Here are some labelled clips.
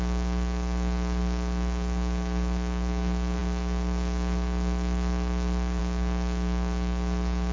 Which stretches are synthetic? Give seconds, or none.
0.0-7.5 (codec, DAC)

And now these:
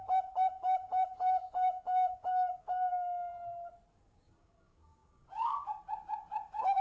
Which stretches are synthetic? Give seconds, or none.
0.0-3.3 (codec, DAC); 3.9-6.8

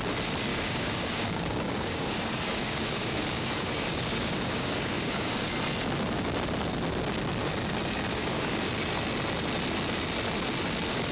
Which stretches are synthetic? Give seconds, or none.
0.5-5.5 (codec, DAC); 8.1-8.6

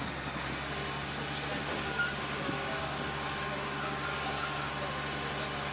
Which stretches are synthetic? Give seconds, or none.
1.7-4.7 (codec, DAC)

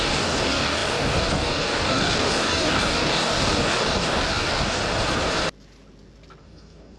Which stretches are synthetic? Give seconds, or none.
0.0-4.8 (codec, DAC); 6.4-7.0